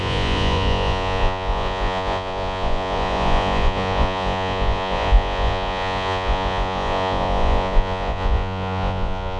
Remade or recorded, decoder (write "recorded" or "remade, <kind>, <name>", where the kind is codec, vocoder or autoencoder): remade, vocoder, Vocos